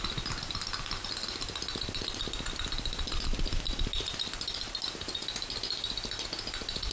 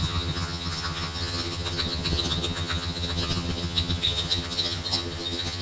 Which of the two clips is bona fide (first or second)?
first